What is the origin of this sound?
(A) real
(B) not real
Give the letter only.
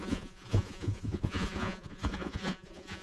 B